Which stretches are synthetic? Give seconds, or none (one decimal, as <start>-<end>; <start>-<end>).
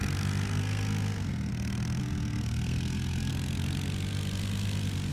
0.6-1.5; 2.0-3.3